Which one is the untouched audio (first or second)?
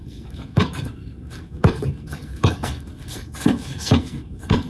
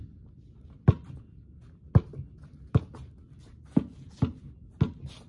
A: second